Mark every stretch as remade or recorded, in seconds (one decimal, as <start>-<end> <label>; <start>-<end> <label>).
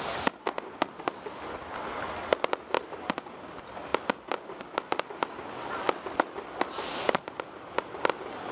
0.0-8.5 recorded